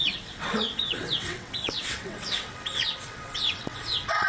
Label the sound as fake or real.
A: fake